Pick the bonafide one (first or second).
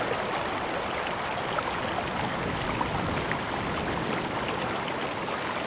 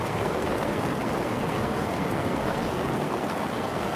first